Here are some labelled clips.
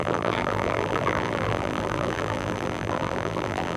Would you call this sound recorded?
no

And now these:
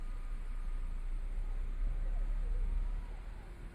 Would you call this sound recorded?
yes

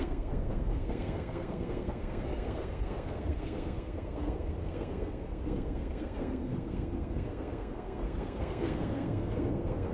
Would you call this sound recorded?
no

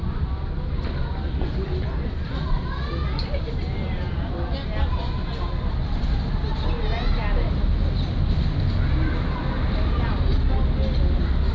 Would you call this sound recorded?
yes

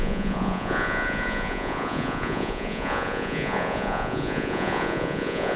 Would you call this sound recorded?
no